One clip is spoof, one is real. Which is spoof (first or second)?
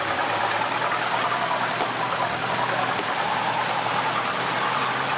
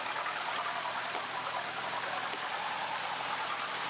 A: first